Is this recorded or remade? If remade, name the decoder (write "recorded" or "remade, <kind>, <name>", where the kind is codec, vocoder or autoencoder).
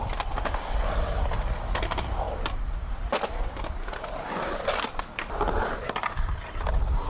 recorded